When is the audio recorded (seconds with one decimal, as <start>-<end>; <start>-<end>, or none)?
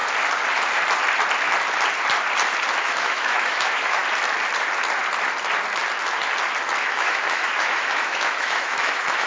0.0-2.8; 4.0-6.8